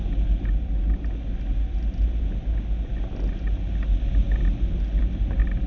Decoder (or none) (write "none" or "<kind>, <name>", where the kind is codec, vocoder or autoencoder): none